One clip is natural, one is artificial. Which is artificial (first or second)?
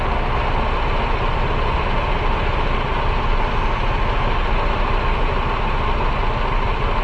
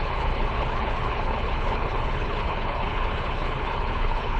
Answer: second